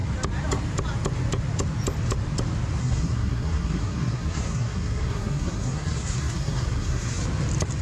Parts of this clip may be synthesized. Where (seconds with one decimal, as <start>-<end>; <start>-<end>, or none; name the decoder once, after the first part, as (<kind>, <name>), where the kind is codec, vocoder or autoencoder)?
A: 2.8-7.2 (codec, SNAC)